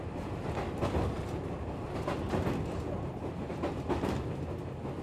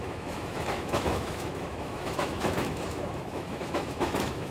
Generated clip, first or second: second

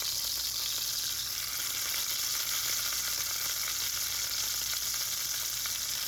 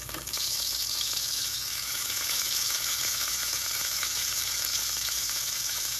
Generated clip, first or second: second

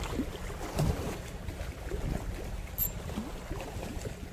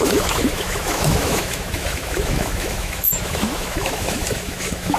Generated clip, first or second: second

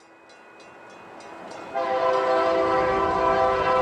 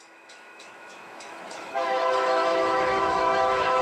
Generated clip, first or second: second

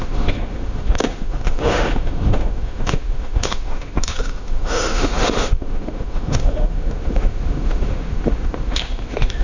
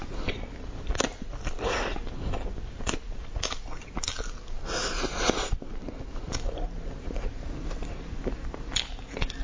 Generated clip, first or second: first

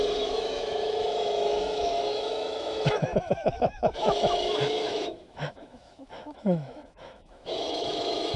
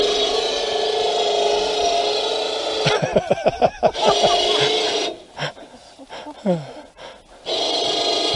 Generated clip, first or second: first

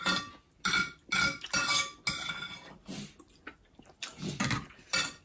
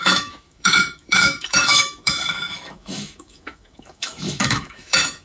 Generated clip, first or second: second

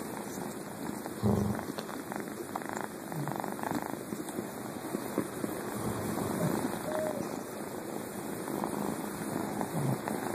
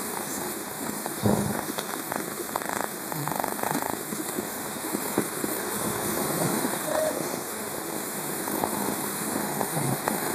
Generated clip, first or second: second